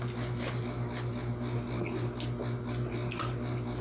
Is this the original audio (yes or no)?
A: yes